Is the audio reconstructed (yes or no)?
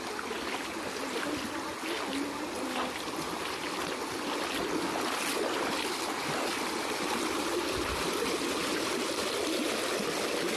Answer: no